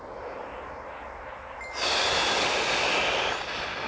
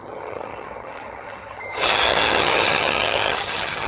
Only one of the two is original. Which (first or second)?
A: first